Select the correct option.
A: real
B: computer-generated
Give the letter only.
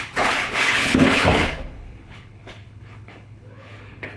B